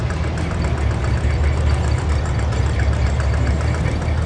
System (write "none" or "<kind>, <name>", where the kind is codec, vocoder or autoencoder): none